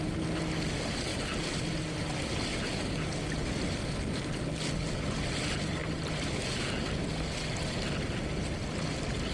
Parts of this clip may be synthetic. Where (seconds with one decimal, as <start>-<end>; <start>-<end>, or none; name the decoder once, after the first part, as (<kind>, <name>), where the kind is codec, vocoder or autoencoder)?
none